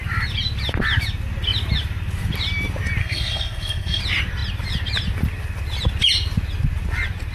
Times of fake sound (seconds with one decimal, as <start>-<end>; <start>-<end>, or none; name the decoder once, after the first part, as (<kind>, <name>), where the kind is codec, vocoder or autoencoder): 3.0-4.0 (codec, SNAC)